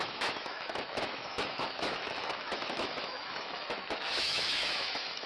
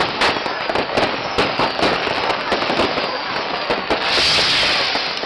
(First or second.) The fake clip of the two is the first